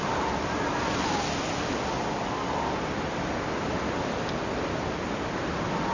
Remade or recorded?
recorded